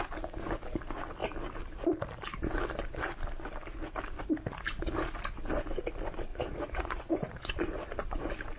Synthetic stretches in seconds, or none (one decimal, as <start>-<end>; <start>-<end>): 6.3-7.5